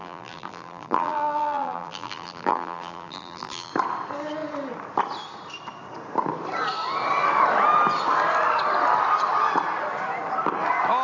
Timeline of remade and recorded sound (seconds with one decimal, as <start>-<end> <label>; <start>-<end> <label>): 0.0-3.7 remade; 3.7-11.0 recorded